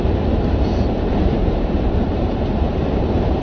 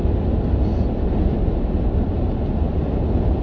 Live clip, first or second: second